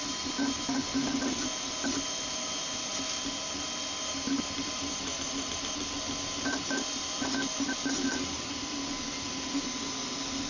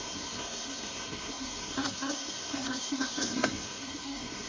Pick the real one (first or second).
first